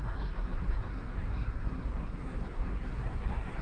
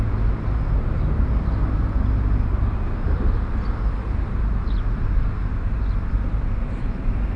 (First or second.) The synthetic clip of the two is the first